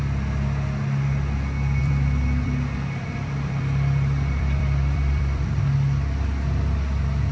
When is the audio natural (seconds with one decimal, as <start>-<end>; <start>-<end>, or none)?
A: 0.0-1.8; 5.6-7.3